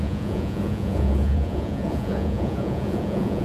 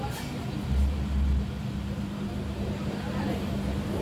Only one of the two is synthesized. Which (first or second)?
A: first